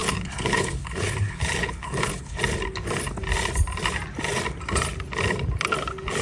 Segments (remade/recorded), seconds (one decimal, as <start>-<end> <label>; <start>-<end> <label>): 0.0-2.4 remade; 2.4-6.2 recorded